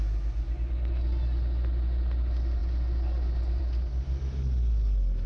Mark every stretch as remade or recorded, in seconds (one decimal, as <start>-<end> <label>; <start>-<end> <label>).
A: 0.0-5.3 recorded